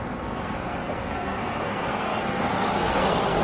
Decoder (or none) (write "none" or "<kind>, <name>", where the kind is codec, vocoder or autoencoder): codec, SNAC